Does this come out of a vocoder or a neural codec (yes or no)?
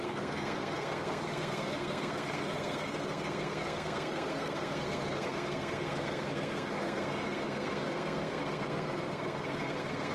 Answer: yes